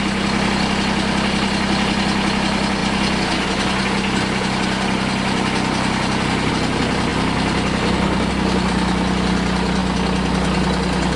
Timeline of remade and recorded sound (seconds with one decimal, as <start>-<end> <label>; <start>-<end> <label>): 0.0-11.2 recorded